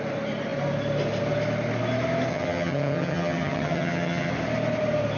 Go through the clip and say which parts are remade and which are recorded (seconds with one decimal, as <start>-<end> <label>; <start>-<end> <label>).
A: 0.0-2.3 recorded; 2.3-4.3 remade; 4.3-5.2 recorded